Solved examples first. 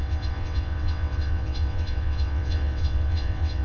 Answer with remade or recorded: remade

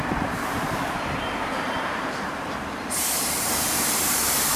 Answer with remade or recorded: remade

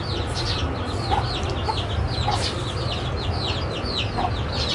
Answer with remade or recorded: recorded